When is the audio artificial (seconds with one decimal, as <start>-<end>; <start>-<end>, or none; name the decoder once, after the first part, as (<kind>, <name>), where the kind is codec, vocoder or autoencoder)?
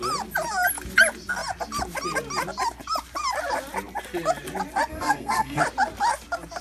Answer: 4.9-5.6 (codec, SNAC)